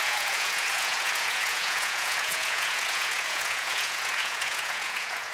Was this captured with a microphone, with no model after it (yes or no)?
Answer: no